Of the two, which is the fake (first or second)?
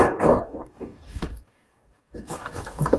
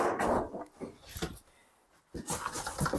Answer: first